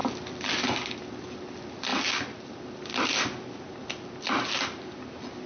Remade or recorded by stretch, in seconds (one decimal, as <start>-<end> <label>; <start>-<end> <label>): 0.0-0.6 remade; 0.6-5.5 recorded